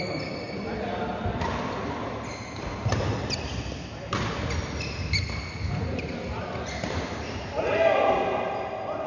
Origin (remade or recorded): recorded